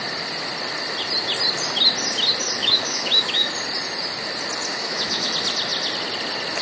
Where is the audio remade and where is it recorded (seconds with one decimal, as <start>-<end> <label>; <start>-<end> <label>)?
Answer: 0.0-2.6 recorded; 2.6-3.5 remade; 3.5-4.7 recorded; 4.7-5.3 remade; 5.3-6.6 recorded